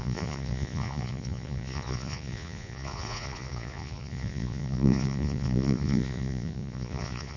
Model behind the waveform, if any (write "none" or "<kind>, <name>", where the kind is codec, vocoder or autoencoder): vocoder, Vocos